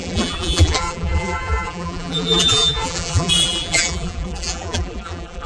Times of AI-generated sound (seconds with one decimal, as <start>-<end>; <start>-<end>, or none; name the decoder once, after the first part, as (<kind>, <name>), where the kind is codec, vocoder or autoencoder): 0.0-5.5 (vocoder, BigVGAN v2)